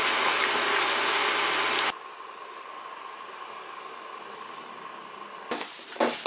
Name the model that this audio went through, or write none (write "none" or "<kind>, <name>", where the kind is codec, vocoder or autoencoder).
none